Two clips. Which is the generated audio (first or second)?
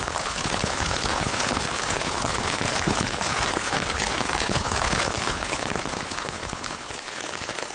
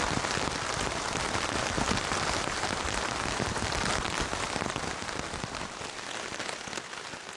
first